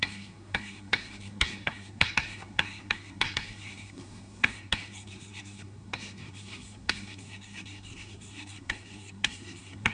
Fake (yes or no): yes